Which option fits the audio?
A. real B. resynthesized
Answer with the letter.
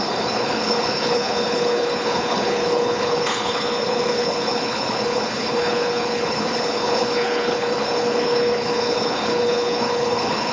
B